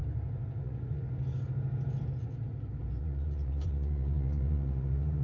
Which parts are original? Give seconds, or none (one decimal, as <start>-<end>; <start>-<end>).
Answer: 0.0-0.6; 1.0-3.0